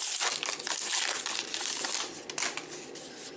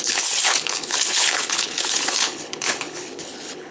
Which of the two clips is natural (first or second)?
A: first